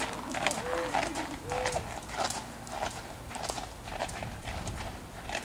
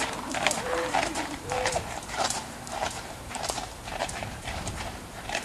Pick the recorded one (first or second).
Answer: first